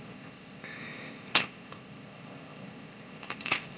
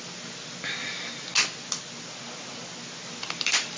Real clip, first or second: second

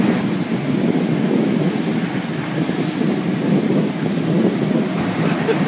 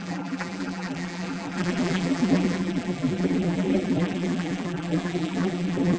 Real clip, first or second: first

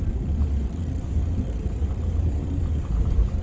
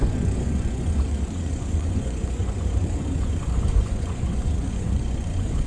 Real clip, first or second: first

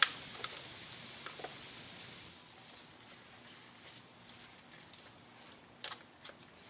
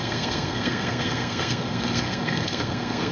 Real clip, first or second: first